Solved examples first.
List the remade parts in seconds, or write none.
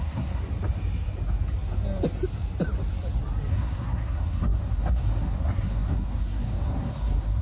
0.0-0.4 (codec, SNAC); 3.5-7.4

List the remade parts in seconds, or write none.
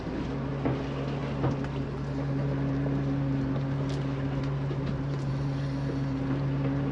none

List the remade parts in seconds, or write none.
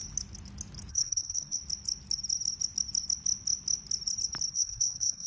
0.9-1.6 (codec, SNAC); 4.5-5.3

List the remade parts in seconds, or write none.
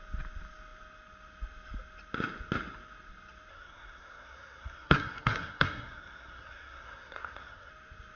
3.5-7.7 (codec, SNAC)